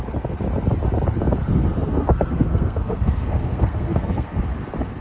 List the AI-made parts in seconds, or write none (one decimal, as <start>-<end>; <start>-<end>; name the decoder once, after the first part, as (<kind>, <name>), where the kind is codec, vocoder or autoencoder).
1.4-4.4 (codec, SNAC)